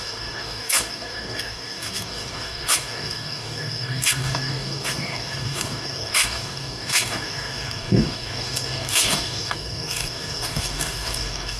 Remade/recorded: remade